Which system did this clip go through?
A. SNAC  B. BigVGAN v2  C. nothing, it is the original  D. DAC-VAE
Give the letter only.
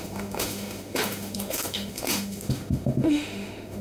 D